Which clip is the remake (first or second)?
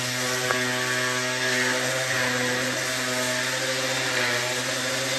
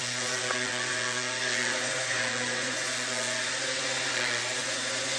second